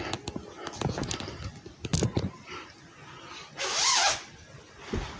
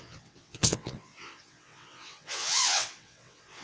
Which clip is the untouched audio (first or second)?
first